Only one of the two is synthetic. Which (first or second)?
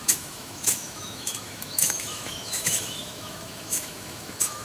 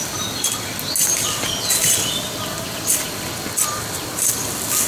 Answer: first